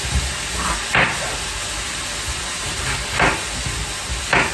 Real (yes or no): yes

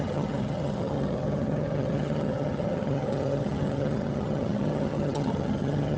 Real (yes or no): no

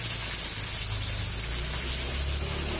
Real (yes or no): yes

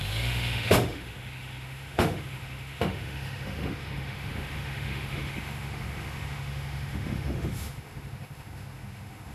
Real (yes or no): no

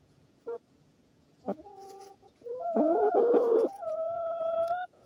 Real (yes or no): no